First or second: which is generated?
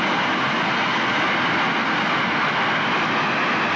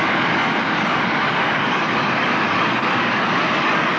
second